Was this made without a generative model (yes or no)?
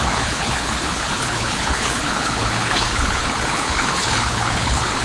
no